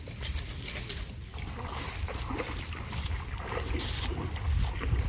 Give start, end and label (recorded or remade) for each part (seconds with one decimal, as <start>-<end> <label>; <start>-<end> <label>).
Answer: 0.0-5.1 recorded